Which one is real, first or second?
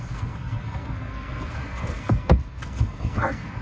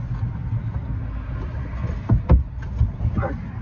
second